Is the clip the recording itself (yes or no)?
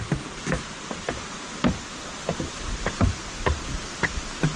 yes